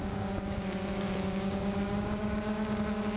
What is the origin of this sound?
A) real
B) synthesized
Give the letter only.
B